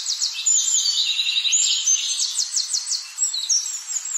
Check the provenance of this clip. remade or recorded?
recorded